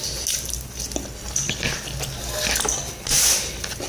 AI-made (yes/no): no